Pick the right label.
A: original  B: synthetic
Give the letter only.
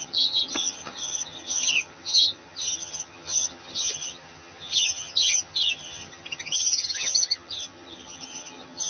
B